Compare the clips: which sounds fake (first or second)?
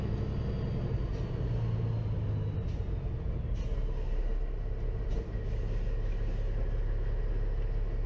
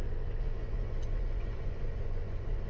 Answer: second